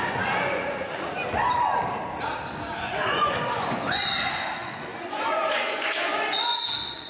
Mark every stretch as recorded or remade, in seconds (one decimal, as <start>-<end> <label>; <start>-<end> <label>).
0.0-1.2 remade; 1.2-2.8 recorded; 2.8-7.1 remade